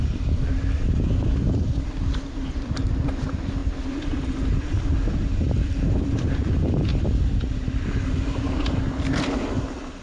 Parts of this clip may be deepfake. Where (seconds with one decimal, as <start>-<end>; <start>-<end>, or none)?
0.0-10.0